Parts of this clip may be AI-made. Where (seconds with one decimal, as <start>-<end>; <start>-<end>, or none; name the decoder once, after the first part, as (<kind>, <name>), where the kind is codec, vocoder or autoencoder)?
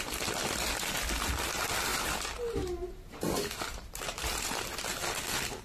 3.7-4.6 (vocoder, BigVGAN v2)